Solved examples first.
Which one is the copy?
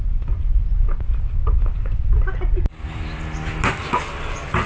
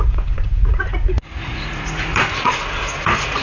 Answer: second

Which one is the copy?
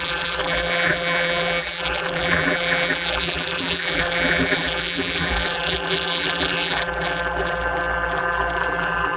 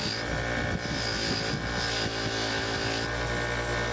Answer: first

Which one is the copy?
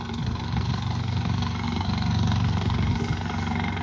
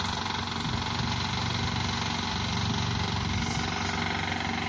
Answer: first